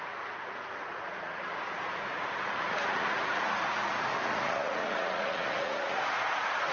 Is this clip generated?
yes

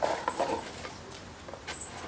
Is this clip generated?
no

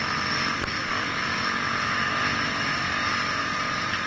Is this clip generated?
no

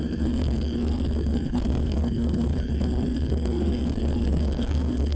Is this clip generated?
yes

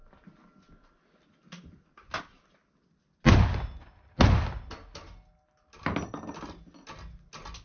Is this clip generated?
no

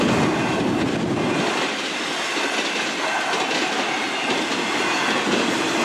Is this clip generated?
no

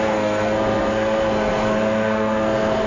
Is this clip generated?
yes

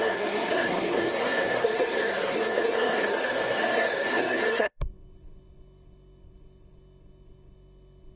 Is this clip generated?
yes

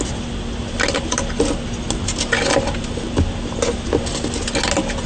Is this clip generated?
no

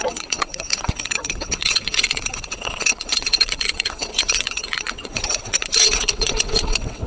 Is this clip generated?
yes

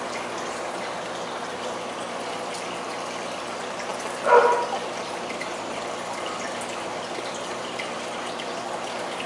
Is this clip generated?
no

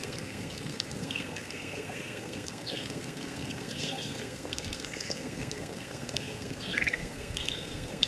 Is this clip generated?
yes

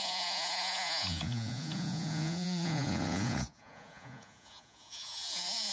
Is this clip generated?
yes